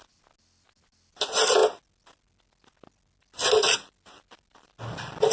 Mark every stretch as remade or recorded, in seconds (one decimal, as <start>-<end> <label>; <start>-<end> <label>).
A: 0.0-5.3 recorded